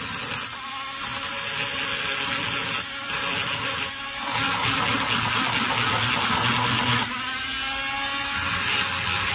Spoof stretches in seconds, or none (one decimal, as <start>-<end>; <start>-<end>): none